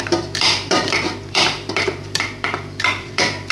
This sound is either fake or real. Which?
fake